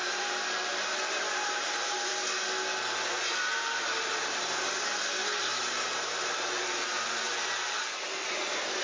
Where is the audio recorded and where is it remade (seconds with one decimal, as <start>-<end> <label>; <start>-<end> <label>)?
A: 0.0-2.1 remade; 2.1-3.1 recorded; 3.1-4.4 remade; 4.4-5.2 recorded; 5.2-8.4 remade; 8.4-8.8 recorded